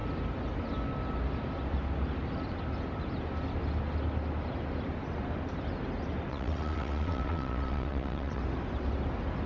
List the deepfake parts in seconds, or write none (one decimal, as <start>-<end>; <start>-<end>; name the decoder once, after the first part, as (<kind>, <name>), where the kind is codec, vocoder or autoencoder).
6.3-8.4 (vocoder, WaveNeXt)